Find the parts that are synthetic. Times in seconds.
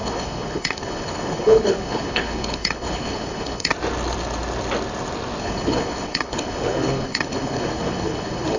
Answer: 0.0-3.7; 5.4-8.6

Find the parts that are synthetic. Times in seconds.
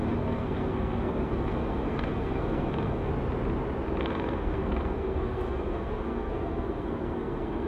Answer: 0.0-3.1; 4.0-7.7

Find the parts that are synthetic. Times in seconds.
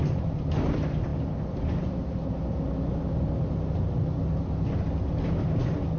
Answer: none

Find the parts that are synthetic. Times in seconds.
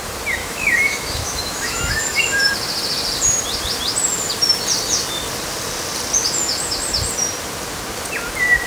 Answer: 0.4-2.5